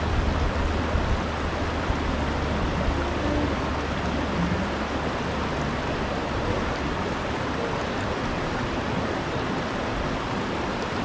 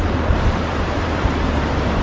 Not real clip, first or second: second